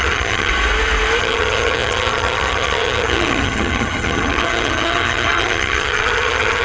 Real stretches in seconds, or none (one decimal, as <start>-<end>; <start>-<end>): 0.5-1.2